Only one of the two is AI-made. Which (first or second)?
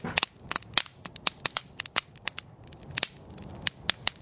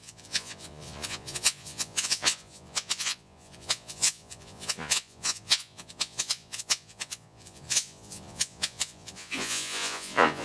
second